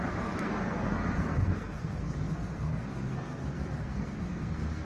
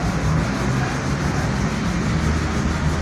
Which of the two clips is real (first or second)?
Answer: second